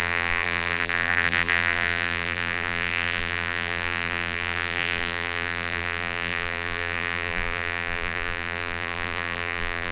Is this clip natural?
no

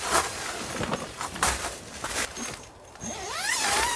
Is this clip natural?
yes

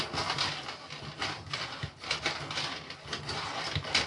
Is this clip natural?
yes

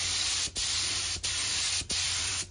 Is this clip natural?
no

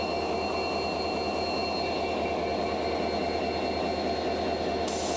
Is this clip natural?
yes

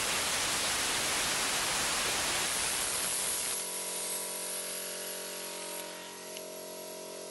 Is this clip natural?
yes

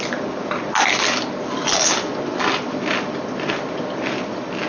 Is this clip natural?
yes